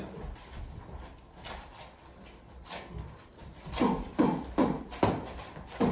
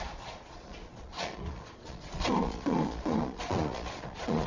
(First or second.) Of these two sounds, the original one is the first